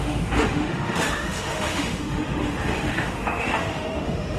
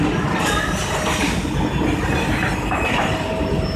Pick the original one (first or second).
second